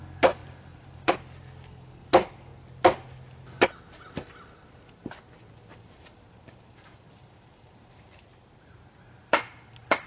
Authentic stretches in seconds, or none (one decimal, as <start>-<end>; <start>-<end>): 0.0-0.4; 1.1-5.7; 9.6-10.1